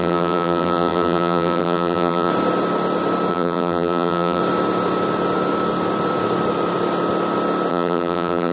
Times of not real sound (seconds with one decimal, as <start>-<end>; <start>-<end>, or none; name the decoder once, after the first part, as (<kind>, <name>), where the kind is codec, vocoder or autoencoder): 0.0-2.3 (vocoder, BigVGAN v2); 3.3-4.4; 7.7-8.5